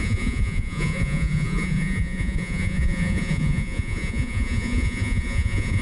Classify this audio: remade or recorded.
remade